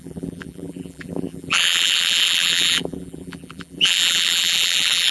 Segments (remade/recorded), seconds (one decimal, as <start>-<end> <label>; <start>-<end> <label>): 0.0-5.1 remade